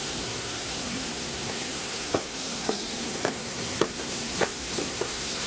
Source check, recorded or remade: remade